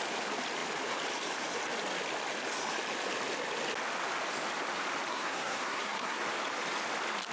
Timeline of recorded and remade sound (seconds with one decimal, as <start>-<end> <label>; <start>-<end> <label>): 0.0-5.1 recorded; 5.1-6.2 remade; 6.2-7.3 recorded